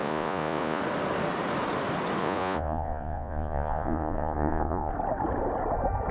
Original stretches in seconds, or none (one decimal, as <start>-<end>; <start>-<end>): 0.8-2.2; 4.9-6.1